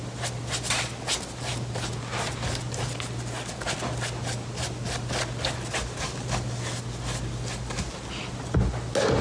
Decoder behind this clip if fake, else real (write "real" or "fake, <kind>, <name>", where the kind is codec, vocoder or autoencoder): real